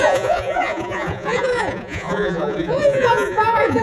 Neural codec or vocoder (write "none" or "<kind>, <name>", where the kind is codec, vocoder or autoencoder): vocoder, Vocos